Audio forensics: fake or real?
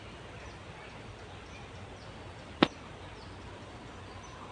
real